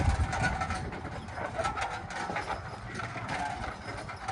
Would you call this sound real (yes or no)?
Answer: yes